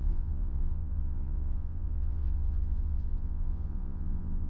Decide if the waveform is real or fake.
fake